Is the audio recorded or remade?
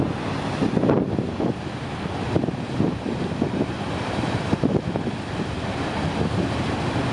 recorded